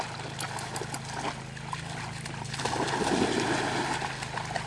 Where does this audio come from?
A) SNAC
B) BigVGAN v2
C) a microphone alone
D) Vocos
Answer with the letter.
C